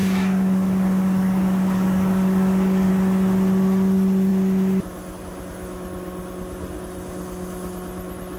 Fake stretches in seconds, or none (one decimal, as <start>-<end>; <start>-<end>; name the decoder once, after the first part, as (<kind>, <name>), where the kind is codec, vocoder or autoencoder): 0.0-2.9 (codec, DAC)